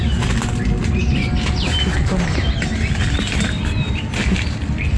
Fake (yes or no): no